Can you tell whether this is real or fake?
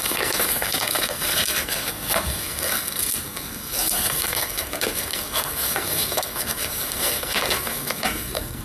fake